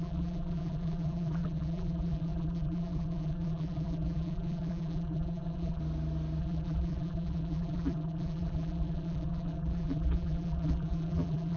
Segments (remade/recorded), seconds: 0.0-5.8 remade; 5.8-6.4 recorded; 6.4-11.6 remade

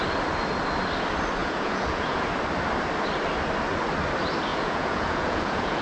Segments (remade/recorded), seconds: 0.0-1.4 recorded; 1.4-2.3 remade; 2.3-4.5 recorded; 4.5-5.8 remade

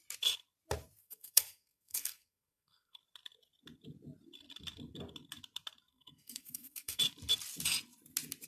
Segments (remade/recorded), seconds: 0.0-1.0 recorded; 1.0-3.0 remade; 3.0-5.9 recorded; 5.9-7.0 remade; 7.0-8.5 recorded

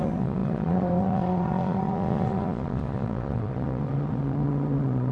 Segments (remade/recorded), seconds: 0.0-5.1 remade

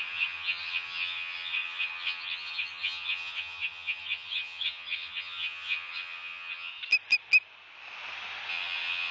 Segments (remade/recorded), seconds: 0.0-6.7 remade; 6.7-8.5 recorded; 8.5-9.1 remade

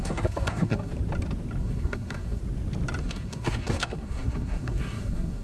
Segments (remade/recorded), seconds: 0.0-0.9 remade; 0.9-1.6 recorded; 1.6-2.4 remade; 2.4-3.0 recorded; 3.0-5.4 remade